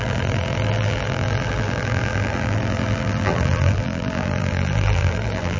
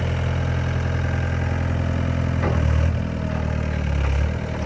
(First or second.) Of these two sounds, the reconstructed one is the first